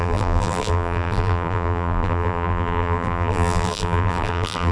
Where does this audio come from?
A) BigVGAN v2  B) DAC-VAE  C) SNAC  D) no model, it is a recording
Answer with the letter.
A